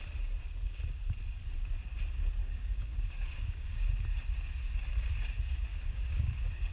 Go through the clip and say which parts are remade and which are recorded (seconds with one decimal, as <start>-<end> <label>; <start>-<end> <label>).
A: 0.0-2.4 recorded; 2.4-3.9 remade; 3.9-5.7 recorded; 5.7-6.7 remade